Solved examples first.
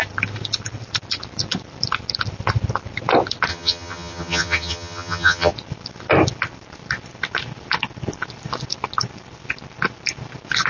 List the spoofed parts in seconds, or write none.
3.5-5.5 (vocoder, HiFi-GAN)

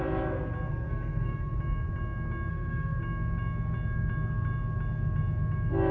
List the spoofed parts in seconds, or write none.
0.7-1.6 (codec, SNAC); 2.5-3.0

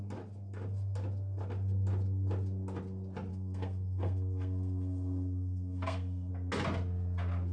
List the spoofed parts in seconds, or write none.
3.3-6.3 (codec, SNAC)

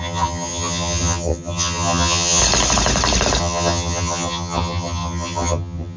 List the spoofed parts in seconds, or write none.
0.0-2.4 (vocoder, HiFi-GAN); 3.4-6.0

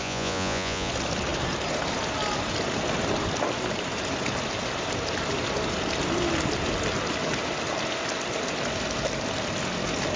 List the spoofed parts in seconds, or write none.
0.0-0.9 (vocoder, Vocos)